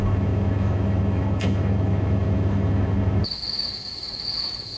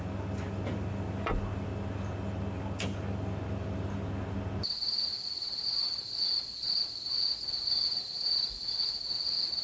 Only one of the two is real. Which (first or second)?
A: second